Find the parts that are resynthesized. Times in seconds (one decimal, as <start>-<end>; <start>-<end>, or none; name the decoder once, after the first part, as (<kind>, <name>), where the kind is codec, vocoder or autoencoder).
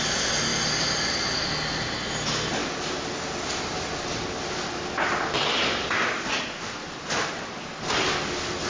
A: none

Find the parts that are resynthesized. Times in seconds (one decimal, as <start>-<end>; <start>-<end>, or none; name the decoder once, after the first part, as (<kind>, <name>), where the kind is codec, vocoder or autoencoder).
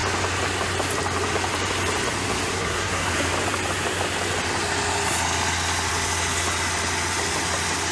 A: 2.5-3.1 (codec, SNAC)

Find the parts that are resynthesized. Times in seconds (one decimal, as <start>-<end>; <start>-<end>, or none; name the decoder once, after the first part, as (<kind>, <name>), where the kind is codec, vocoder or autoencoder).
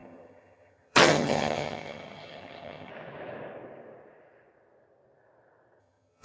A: 0.0-2.9 (vocoder, HiFi-GAN); 5.8-6.2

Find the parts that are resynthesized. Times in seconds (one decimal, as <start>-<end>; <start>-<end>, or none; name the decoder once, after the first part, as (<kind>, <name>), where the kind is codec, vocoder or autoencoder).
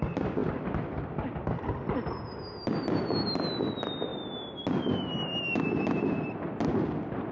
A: none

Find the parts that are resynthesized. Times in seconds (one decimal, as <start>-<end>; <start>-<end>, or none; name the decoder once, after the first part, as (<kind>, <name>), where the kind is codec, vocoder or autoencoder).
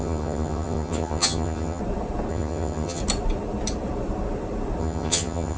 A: 0.0-1.8 (vocoder, HiFi-GAN); 2.3-3.0; 4.8-5.6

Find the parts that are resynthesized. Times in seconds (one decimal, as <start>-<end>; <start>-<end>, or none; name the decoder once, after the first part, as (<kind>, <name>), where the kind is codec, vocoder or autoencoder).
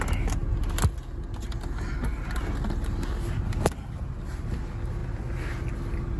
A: none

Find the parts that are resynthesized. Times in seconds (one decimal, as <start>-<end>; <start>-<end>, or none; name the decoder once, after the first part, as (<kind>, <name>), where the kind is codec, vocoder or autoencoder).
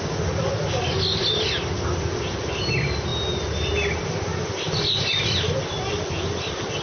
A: none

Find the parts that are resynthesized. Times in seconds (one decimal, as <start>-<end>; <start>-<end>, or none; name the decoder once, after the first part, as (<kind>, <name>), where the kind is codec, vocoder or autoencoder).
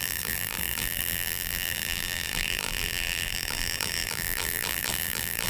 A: 0.0-5.5 (vocoder, BigVGAN v2)